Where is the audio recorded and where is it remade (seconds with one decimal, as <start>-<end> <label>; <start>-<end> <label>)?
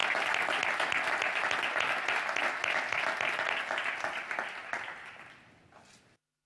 0.0-6.5 recorded